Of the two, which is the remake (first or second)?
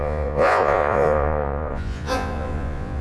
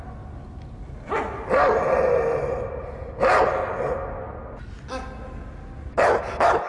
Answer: first